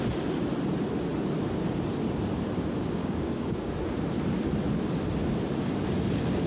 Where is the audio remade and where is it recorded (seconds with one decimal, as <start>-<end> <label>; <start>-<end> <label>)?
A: 0.0-3.0 recorded; 3.0-3.7 remade; 3.7-6.5 recorded